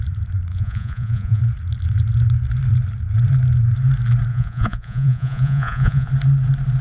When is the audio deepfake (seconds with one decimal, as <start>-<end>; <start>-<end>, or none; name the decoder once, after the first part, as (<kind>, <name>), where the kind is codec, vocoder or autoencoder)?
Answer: 0.5-1.4 (vocoder, Vocos); 4.3-6.1